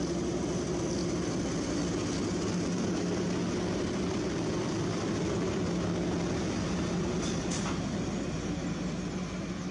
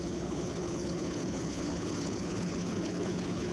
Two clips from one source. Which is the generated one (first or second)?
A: second